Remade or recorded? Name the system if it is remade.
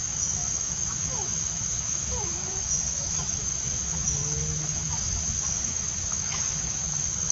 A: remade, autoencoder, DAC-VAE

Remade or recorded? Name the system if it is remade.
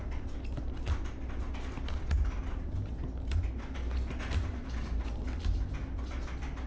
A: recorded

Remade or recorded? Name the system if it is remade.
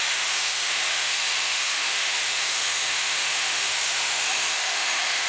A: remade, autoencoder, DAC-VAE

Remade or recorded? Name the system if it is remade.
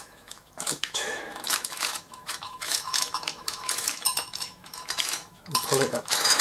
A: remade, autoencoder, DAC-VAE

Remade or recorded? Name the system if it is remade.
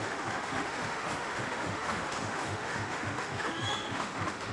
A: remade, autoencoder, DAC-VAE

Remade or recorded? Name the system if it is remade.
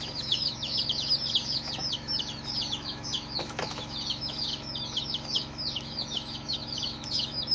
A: remade, autoencoder, DAC-VAE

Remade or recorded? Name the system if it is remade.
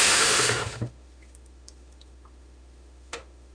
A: remade, autoencoder, DAC-VAE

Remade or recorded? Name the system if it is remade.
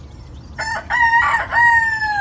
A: recorded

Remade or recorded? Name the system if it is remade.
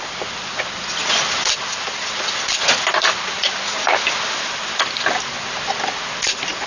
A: recorded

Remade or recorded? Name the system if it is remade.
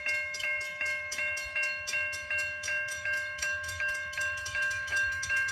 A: remade, autoencoder, DAC-VAE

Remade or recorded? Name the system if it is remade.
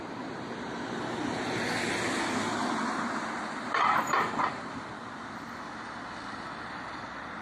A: recorded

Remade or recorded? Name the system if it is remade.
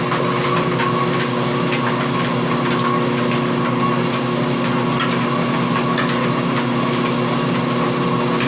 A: recorded